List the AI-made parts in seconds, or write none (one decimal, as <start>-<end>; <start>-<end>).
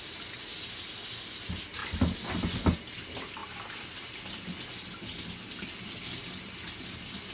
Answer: 1.8-3.0